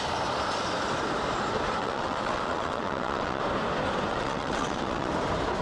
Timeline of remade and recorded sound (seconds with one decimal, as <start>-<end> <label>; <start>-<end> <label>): 0.0-1.8 recorded; 1.8-3.4 remade; 3.4-4.1 recorded; 4.1-5.1 remade; 5.1-5.6 recorded